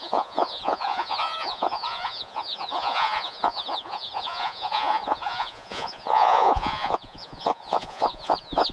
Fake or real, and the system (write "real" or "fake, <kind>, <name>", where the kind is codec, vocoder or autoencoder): fake, vocoder, Vocos